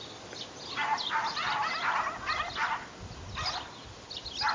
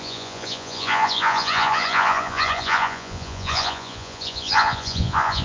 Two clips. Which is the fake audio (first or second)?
second